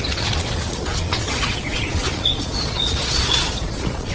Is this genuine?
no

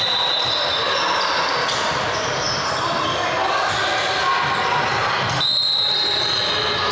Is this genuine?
yes